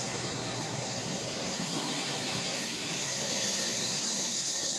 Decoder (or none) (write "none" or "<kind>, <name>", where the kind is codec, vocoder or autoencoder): codec, SNAC